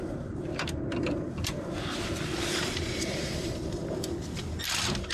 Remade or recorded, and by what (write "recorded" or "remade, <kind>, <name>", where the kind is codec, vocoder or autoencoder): remade, vocoder, BigVGAN v2